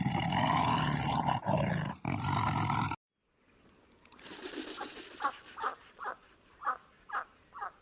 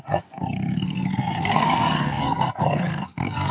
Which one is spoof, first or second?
second